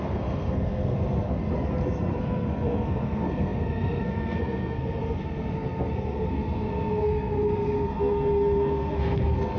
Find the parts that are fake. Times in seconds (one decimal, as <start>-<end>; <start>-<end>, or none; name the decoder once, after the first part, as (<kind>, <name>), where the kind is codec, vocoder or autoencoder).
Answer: 0.0-1.4 (codec, SNAC); 2.2-9.6